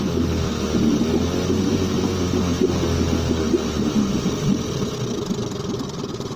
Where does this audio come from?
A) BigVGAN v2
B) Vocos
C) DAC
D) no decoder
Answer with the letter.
D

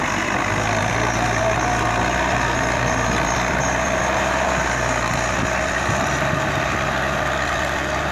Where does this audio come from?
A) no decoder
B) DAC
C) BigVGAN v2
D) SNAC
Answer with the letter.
A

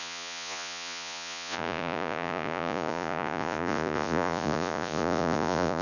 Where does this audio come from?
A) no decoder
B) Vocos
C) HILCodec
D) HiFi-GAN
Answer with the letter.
B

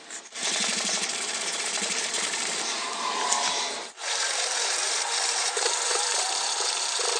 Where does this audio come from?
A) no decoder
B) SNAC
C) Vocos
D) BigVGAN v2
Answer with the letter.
D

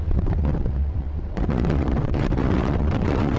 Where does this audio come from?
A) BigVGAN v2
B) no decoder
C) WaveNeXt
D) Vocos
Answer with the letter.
C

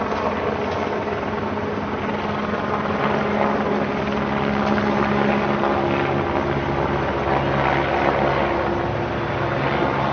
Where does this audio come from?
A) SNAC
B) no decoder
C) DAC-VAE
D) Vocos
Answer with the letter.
B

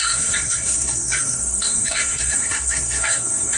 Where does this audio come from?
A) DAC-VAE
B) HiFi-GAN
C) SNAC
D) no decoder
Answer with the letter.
C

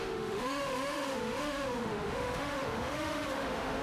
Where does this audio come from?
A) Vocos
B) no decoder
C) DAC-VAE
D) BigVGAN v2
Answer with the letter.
C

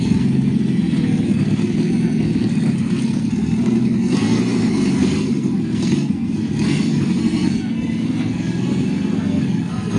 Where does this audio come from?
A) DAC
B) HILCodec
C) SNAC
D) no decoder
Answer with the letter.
C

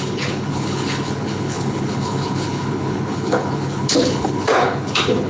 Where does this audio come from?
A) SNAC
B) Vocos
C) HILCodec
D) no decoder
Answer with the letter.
C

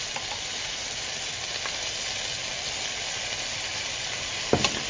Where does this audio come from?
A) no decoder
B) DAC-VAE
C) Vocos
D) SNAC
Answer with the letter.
A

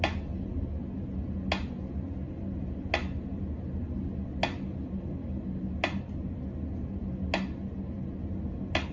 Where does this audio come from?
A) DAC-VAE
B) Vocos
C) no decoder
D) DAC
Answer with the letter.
C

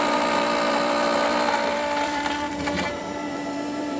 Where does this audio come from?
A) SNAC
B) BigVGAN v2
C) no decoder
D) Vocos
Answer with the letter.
B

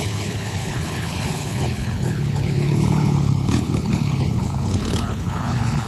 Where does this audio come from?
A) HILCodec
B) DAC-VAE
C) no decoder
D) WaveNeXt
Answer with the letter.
A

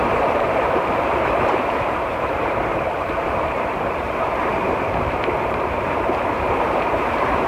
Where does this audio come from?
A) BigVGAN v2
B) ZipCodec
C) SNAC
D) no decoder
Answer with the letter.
A